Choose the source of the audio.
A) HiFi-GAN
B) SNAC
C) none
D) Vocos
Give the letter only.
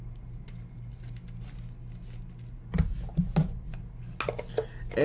C